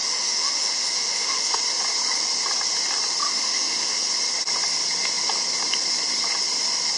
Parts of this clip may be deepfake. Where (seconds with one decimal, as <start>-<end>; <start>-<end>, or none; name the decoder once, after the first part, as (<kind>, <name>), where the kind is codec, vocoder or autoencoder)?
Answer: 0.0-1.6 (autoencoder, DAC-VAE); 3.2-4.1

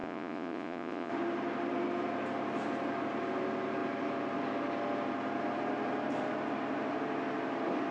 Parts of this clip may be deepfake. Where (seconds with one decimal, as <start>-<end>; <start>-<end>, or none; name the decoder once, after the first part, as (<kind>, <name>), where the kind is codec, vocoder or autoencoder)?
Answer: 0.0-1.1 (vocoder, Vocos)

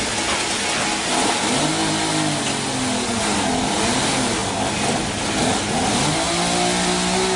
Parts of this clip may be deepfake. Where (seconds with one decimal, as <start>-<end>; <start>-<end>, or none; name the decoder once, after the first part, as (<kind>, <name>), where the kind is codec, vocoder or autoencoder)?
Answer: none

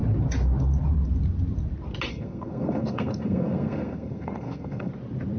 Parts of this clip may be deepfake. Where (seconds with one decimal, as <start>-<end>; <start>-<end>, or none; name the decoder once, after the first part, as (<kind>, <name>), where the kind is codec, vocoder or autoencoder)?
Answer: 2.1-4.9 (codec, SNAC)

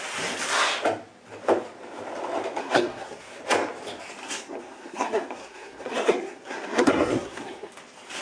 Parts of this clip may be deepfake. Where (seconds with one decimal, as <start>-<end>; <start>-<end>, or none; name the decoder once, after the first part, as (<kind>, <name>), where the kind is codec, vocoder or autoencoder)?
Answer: 2.6-3.3 (codec, SNAC); 4.2-7.7

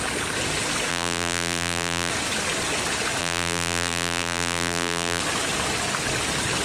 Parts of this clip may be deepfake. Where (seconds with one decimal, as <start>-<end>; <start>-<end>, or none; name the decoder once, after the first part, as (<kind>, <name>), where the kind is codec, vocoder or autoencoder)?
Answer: 0.9-2.1 (vocoder, BigVGAN v2); 3.2-5.2

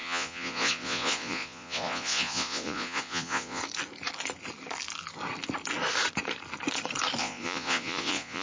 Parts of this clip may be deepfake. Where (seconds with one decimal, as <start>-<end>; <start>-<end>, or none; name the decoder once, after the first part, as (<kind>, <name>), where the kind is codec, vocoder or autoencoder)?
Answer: 0.0-3.6 (vocoder, Vocos); 7.2-8.4

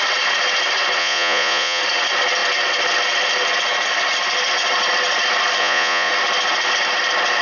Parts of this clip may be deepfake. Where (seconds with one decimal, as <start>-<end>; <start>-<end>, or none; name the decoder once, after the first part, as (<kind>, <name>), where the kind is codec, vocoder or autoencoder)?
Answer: 1.0-1.8 (vocoder, Vocos); 5.6-6.1